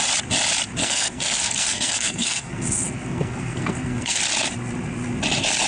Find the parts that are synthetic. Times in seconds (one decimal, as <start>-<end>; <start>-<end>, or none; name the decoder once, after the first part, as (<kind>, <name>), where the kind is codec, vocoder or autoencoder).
0.8-4.2 (codec, SNAC)